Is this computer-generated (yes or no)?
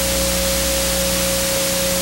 no